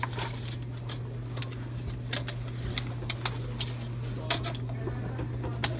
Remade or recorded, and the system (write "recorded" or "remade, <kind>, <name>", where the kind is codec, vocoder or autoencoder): recorded